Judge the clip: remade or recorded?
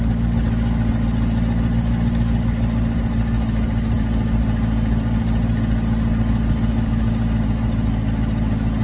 recorded